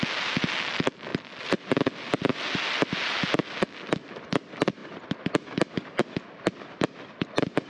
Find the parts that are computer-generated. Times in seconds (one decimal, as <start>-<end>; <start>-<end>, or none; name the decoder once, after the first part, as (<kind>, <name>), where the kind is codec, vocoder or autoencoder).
none